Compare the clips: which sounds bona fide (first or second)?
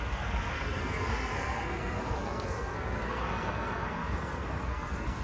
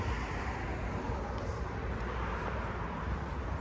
second